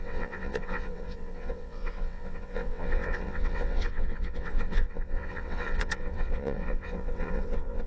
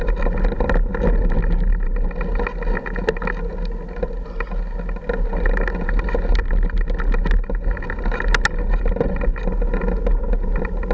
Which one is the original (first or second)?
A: second